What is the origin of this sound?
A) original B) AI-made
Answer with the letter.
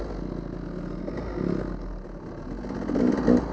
A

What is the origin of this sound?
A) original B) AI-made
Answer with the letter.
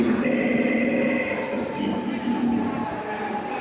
A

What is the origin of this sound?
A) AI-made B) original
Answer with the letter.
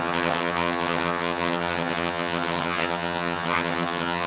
A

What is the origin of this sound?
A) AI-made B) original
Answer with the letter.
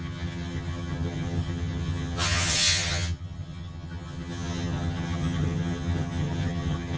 A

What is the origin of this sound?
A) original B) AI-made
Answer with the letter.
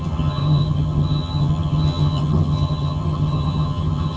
B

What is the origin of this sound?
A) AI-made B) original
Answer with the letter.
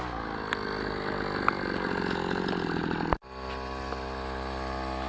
B